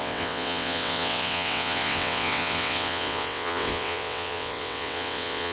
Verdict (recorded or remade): remade